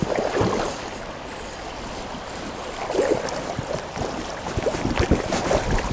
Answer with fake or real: real